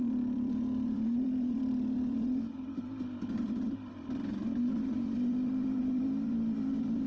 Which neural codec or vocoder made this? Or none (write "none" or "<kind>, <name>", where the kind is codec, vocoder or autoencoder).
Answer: vocoder, BigVGAN v2